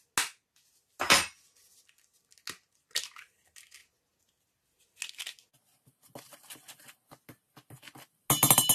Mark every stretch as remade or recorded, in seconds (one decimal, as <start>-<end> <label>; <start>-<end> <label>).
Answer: 0.0-8.7 recorded